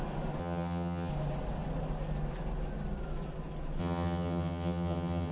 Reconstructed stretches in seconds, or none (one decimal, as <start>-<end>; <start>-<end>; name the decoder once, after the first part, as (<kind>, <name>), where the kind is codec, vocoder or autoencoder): 0.4-1.1 (vocoder, HiFi-GAN); 3.8-5.3